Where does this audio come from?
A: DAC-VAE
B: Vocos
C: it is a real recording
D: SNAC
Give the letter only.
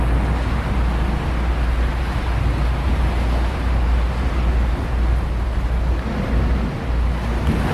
C